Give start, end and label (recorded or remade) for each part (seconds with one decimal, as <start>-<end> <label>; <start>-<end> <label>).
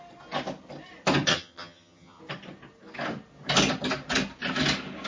0.0-1.3 recorded; 1.3-2.2 remade; 2.2-5.1 recorded